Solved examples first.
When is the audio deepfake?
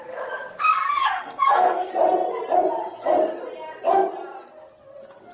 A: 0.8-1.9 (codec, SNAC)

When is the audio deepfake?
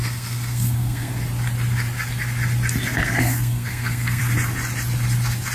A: 0.0-1.1 (codec, SNAC); 3.0-4.2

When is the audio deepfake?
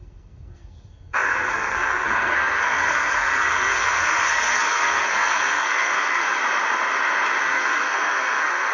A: 0.0-6.4 (codec, SNAC); 7.4-8.7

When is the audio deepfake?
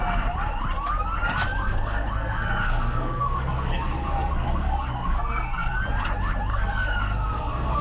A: 1.6-5.8 (codec, SNAC); 6.5-7.8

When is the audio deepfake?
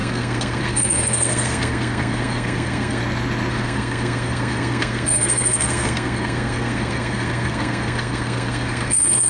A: 0.0-3.0 (codec, SNAC); 3.5-9.3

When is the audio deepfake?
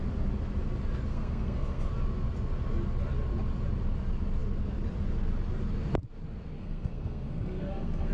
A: 1.1-1.9 (codec, SNAC); 6.6-8.1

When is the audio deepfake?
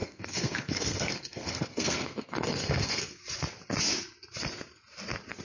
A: 0.0-3.2 (codec, SNAC)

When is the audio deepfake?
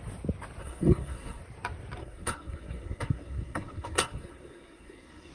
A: 0.6-1.4 (codec, SNAC); 2.0-5.3